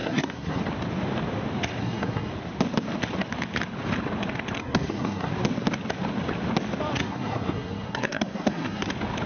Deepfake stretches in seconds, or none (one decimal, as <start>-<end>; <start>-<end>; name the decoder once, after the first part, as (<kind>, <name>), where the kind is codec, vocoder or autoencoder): 0.0-0.6 (codec, SNAC); 1.8-2.3; 4.6-5.3; 7.0-8.9